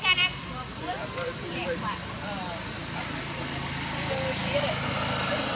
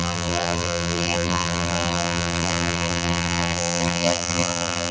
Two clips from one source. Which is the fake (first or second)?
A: second